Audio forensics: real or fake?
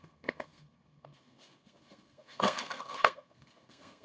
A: fake